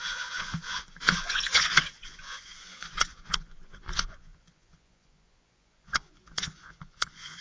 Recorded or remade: remade